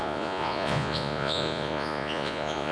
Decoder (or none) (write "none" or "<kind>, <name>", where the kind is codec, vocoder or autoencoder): vocoder, Vocos